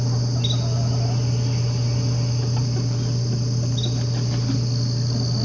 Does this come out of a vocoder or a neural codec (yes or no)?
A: no